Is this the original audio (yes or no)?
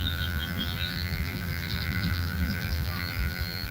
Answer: no